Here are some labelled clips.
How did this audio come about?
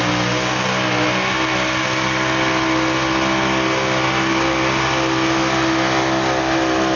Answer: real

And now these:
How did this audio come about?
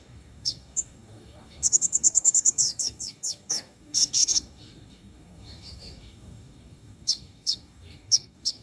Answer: fake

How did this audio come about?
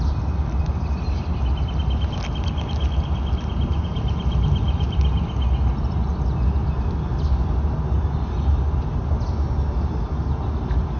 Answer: real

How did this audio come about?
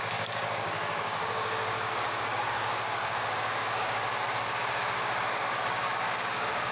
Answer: fake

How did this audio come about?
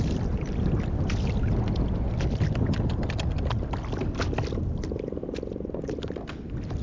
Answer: real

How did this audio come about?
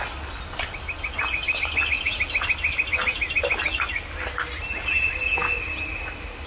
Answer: real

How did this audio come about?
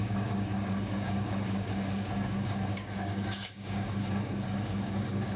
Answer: fake